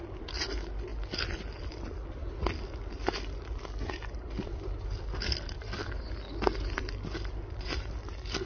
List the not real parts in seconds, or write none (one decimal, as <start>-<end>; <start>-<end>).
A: none